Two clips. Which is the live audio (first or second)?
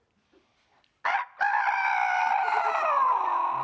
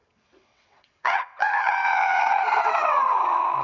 first